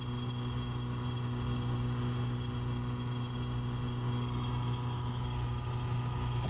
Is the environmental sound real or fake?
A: real